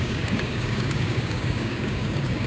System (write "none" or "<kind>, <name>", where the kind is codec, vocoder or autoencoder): codec, DAC